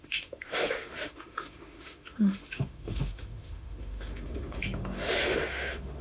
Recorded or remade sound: remade